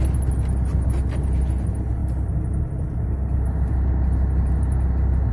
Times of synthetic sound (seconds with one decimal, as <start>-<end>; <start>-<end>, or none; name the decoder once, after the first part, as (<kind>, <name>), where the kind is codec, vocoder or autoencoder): none